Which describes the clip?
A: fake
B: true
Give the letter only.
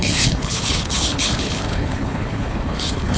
A